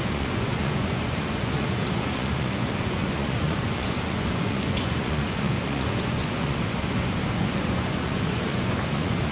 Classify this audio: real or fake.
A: fake